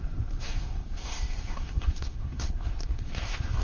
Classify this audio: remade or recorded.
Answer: remade